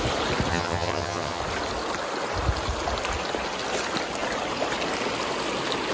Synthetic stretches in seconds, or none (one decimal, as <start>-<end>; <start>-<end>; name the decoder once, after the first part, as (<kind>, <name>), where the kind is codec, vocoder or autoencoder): 0.5-1.4 (vocoder, HiFi-GAN)